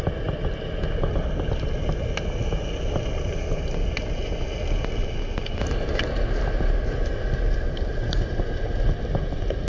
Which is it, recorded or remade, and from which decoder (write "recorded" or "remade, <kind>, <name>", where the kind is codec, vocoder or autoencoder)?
recorded